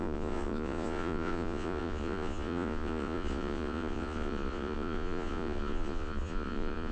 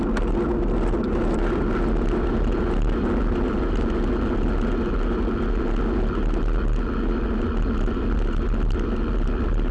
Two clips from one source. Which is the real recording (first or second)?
second